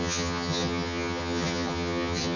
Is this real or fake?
fake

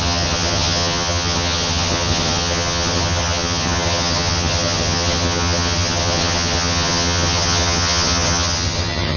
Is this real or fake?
fake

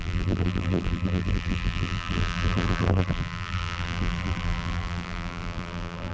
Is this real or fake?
fake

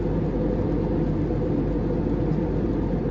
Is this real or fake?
real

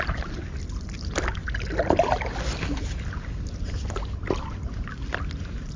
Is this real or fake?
real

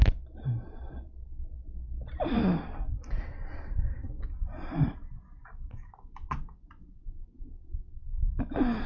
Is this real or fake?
real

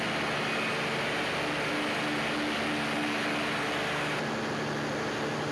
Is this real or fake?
real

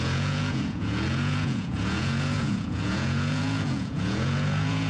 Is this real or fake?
fake